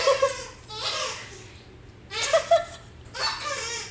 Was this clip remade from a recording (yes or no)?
no